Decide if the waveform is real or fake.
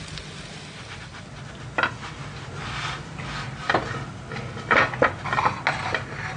real